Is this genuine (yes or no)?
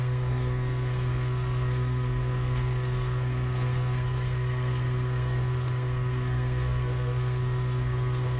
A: no